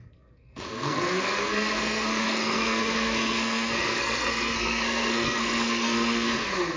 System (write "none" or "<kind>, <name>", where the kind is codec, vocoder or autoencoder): codec, SNAC